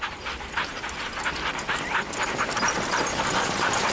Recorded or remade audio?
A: recorded